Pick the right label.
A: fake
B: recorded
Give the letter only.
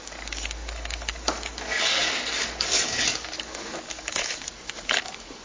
A